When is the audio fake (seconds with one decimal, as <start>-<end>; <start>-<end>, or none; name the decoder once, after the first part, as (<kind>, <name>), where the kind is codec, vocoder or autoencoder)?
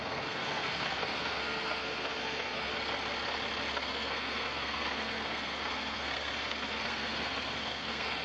0.0-2.7 (codec, SNAC); 3.7-8.2